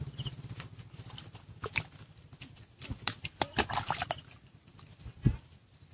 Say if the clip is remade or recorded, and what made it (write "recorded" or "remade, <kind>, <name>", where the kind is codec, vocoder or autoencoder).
recorded